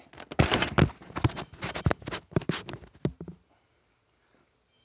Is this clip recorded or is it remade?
recorded